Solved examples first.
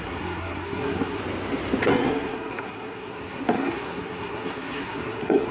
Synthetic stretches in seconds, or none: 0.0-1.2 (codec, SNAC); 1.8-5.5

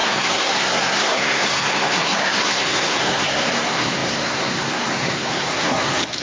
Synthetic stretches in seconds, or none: 0.0-6.2 (codec, SNAC)

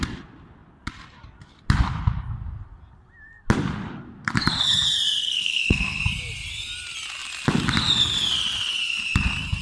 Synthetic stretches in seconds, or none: 5.2-6.0 (codec, SNAC)

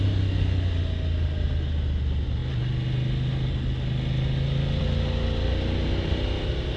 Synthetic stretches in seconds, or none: none

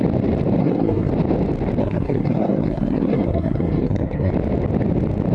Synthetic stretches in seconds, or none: 0.6-1.1 (codec, SNAC); 1.8-4.3

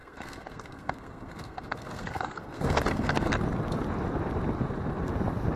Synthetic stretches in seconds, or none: 0.0-3.4 (codec, SNAC)

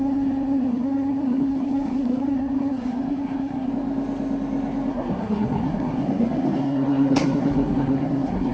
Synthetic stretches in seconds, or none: 0.0-3.7 (codec, SNAC); 4.9-8.5